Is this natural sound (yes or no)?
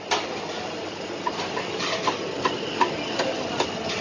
yes